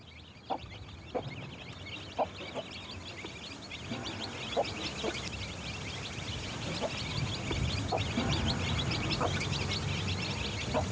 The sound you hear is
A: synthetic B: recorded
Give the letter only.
B